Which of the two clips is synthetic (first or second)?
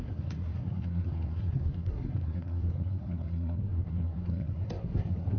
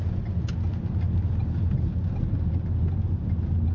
first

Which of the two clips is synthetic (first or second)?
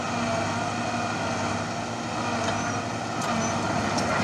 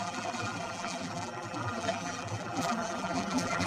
second